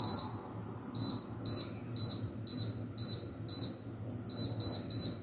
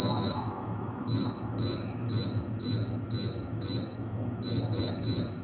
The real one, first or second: first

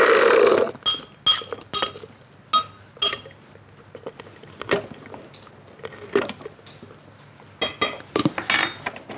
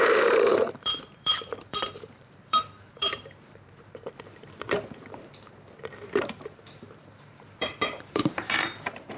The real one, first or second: first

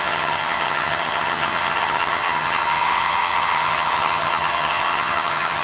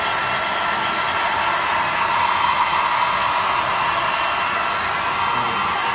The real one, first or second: second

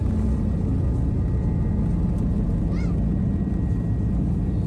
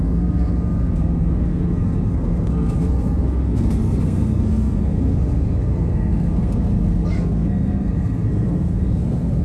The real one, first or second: first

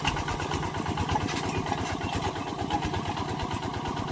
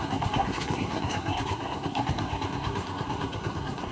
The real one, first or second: first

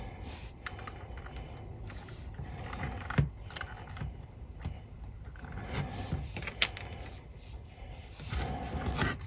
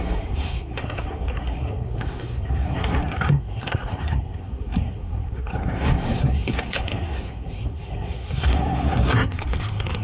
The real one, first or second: first